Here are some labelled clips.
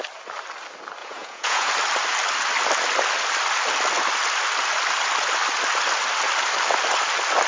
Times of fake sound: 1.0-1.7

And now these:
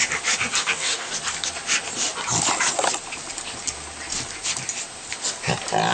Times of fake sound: 0.6-1.1